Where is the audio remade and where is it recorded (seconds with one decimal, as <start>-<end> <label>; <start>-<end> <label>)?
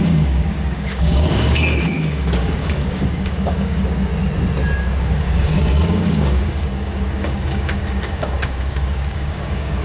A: 0.0-4.1 remade; 4.1-4.8 recorded; 4.8-9.8 remade